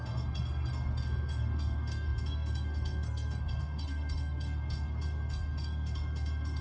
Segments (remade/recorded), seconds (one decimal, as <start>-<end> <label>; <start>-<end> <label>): 0.0-6.6 remade